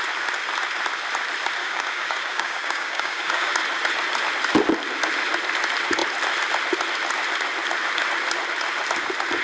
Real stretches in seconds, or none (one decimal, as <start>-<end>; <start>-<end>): 0.0-1.6; 3.5-9.4